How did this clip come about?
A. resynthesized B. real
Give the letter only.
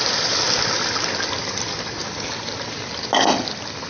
B